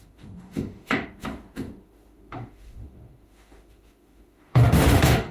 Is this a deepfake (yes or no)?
yes